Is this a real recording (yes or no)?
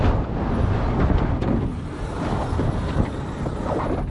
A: yes